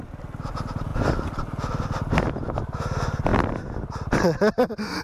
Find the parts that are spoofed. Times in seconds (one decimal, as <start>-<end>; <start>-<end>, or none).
none